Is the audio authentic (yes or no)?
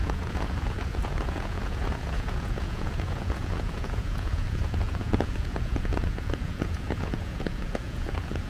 no